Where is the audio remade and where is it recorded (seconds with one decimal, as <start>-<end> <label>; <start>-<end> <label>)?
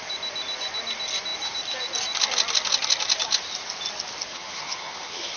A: 0.0-4.3 recorded; 4.3-5.4 remade